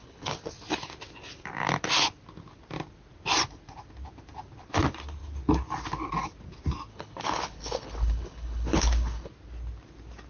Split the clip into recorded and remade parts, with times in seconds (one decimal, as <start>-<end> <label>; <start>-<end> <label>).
0.0-0.5 remade; 0.5-6.9 recorded; 6.9-9.3 remade; 9.3-10.3 recorded